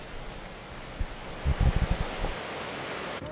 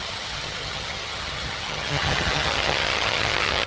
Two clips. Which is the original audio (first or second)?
first